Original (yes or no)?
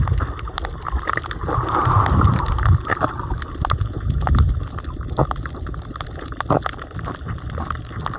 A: yes